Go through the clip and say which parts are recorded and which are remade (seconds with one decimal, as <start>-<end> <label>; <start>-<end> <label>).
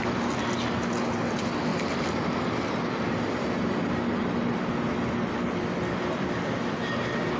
0.0-7.4 recorded